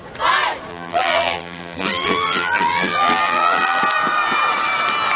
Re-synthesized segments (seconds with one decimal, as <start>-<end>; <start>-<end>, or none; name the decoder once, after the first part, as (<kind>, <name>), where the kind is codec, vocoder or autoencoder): 0.7-3.8 (vocoder, BigVGAN v2)